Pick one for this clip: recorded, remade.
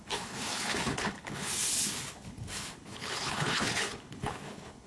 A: remade